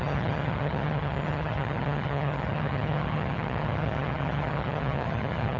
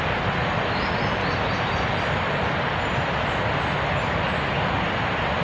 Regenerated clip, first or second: first